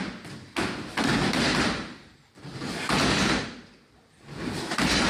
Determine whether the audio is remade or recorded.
recorded